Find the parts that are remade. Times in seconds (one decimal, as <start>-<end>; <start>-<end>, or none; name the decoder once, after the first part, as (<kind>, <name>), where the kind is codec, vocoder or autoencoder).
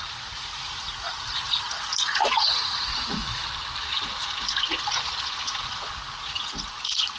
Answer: 0.0-2.9 (vocoder, Vocos); 3.8-7.2